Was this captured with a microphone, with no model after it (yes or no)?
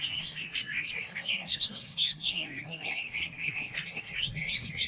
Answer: no